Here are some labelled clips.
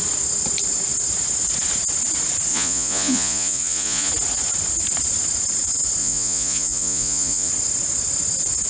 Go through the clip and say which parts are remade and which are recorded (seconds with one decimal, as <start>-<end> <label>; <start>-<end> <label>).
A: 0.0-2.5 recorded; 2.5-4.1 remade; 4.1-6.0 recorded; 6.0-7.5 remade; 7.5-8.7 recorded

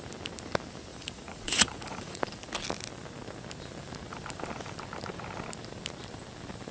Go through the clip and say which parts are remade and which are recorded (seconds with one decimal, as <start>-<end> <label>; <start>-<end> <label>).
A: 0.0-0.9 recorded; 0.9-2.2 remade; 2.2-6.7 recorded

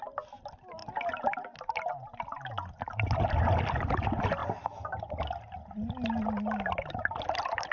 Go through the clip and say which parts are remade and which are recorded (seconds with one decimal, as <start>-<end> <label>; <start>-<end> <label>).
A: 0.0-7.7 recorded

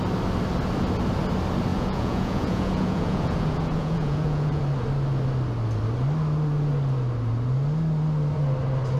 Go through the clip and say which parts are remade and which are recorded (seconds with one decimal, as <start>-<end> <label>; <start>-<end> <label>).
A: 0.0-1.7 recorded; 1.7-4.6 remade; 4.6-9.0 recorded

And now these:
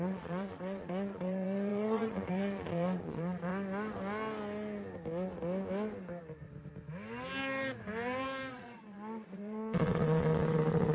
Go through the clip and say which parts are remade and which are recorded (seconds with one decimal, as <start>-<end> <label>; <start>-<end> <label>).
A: 0.0-3.5 remade; 3.5-8.5 recorded; 8.5-10.9 remade

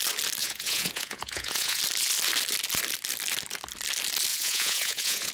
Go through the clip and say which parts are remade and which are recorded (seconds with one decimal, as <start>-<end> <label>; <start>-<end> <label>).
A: 0.0-0.4 recorded; 0.4-1.8 remade; 1.8-4.3 recorded; 4.3-5.3 remade

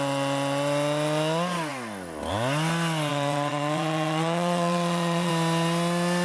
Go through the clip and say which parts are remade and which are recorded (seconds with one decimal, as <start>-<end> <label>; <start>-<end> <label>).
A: 0.0-3.1 recorded; 3.1-5.3 remade; 5.3-6.2 recorded

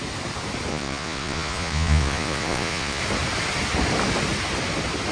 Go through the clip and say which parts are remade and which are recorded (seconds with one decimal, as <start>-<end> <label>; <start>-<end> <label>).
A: 0.0-0.7 recorded; 0.7-3.0 remade; 3.0-5.1 recorded